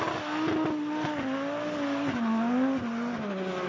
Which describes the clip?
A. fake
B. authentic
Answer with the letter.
B